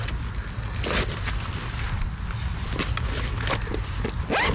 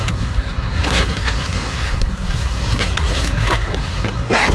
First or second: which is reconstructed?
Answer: second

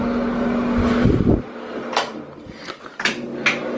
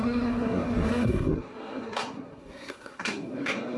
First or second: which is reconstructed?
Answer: second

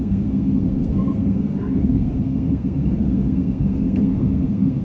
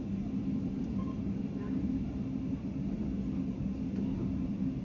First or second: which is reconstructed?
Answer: first